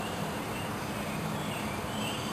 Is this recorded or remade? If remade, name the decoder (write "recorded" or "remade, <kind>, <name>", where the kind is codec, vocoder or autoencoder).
remade, vocoder, BigVGAN v2